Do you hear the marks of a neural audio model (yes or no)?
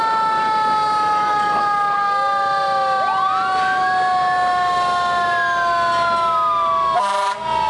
no